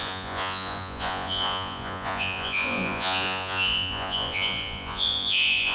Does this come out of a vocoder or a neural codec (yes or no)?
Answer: yes